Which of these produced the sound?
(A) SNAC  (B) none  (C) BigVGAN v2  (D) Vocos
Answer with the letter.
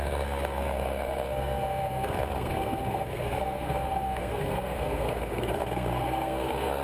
A